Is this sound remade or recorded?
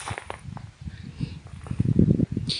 recorded